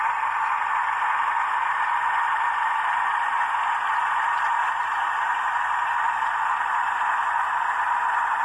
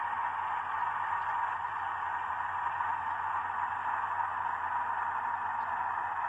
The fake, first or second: second